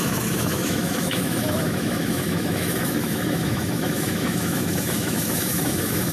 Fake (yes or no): yes